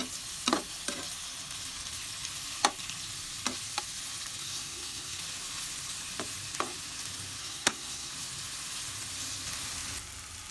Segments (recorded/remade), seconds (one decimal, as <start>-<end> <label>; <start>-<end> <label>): 0.0-4.4 recorded; 4.4-5.2 remade; 5.2-7.4 recorded; 7.4-8.1 remade; 8.1-10.5 recorded